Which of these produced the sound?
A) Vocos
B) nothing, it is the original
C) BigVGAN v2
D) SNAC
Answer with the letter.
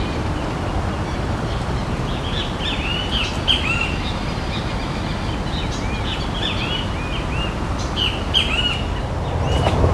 B